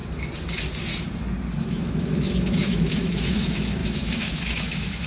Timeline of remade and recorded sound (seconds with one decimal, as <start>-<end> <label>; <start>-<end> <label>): 0.0-1.7 recorded; 1.7-5.1 remade